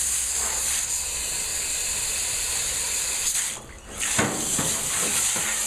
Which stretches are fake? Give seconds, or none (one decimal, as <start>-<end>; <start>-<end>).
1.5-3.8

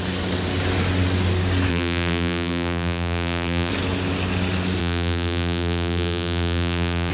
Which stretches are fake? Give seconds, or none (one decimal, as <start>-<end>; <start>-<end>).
1.7-3.7; 4.8-7.1

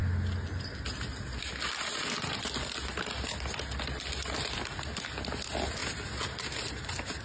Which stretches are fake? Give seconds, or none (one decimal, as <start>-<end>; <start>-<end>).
5.8-7.2